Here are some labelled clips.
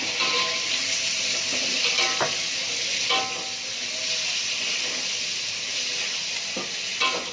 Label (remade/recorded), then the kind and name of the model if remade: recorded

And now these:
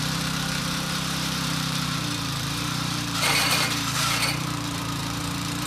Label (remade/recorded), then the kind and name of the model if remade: remade, vocoder, BigVGAN v2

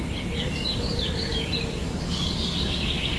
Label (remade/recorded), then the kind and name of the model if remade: remade, codec, DAC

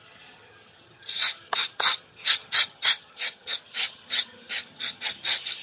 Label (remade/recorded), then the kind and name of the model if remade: remade, vocoder, HiFi-GAN